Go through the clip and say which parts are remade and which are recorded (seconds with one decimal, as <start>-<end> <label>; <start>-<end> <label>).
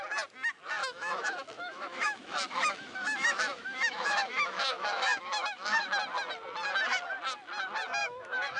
0.0-0.8 recorded; 0.8-5.9 remade; 5.9-8.0 recorded; 8.0-8.6 remade